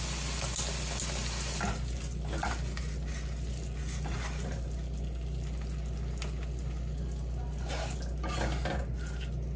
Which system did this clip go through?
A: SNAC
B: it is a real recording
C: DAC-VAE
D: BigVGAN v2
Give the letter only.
B